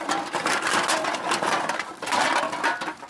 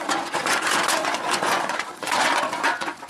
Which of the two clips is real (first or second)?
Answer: first